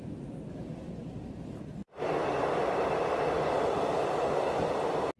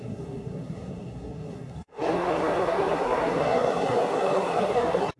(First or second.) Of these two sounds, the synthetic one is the second